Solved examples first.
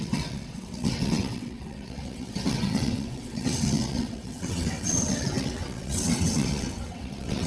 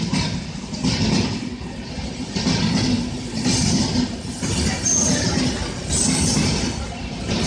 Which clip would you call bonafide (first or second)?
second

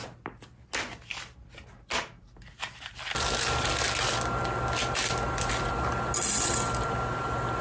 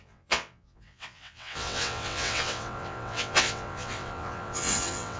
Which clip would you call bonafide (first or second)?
first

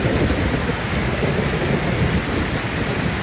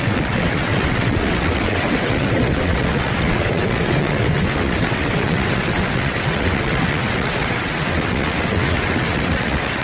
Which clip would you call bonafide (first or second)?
first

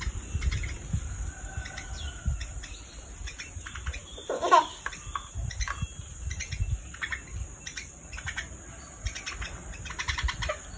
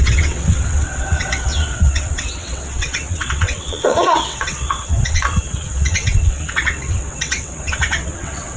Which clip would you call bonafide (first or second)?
first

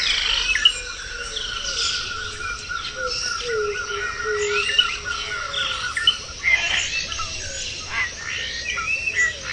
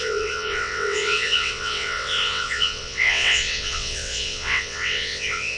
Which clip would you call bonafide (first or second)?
first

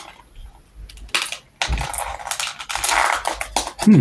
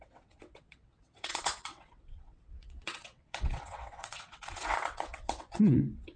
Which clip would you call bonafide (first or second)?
first